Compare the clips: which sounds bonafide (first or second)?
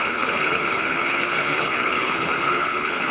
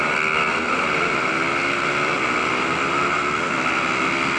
second